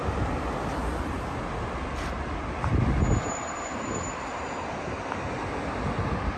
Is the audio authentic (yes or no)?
yes